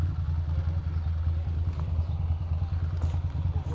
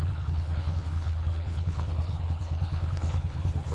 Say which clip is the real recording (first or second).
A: first